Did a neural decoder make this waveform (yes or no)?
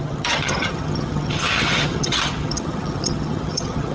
yes